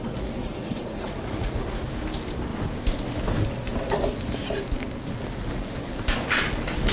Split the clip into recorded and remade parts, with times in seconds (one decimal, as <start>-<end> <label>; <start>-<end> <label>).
0.0-0.4 recorded; 0.4-1.5 remade; 1.5-6.9 recorded

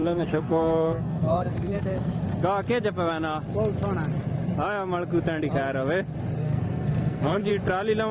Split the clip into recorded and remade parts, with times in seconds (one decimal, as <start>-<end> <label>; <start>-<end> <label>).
0.0-2.2 remade; 2.2-6.4 recorded; 6.4-7.5 remade; 7.5-8.1 recorded

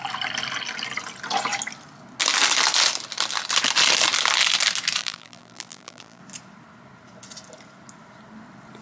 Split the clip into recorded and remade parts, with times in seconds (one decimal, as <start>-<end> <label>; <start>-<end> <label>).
0.0-5.0 recorded; 5.0-6.2 remade; 6.2-8.8 recorded